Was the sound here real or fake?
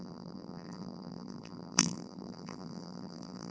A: fake